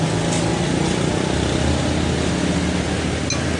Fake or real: real